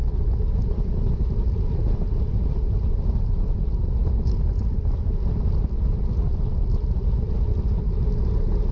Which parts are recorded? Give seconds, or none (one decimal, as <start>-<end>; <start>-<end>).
0.0-8.7